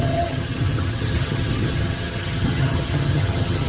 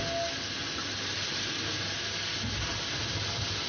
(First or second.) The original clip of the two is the second